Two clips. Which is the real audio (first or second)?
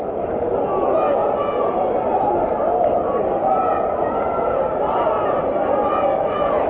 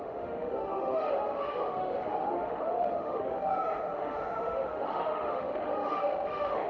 first